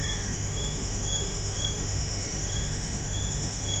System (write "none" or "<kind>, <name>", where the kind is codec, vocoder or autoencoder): autoencoder, DAC-VAE